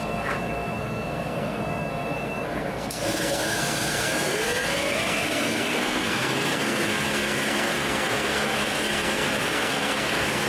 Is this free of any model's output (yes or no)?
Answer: no